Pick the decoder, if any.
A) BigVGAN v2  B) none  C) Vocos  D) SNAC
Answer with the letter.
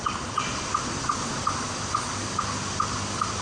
B